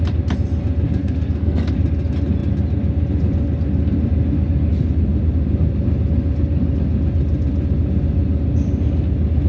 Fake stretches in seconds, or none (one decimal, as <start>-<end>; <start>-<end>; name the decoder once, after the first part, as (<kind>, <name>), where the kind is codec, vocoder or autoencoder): 1.0-1.7 (codec, SNAC)